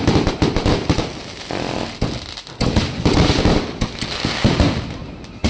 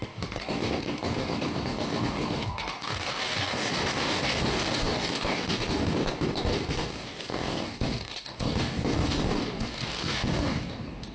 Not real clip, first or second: second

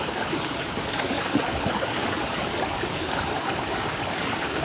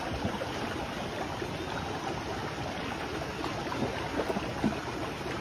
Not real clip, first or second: first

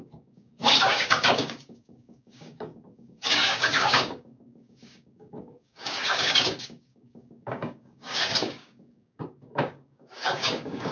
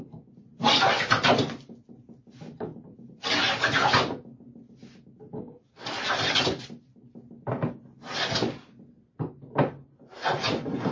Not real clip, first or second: first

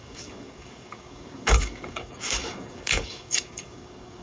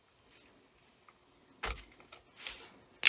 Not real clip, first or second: first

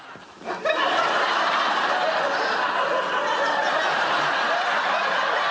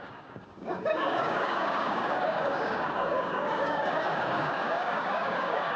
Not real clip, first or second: second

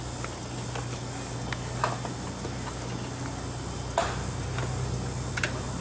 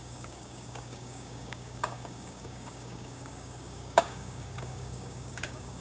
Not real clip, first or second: second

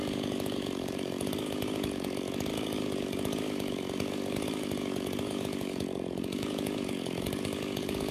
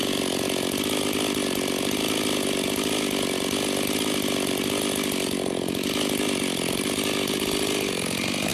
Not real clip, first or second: first